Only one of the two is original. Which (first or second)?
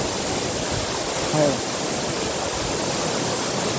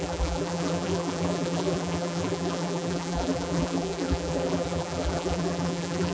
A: first